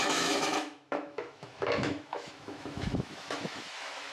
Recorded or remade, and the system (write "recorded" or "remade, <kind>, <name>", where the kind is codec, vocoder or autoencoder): remade, autoencoder, DAC-VAE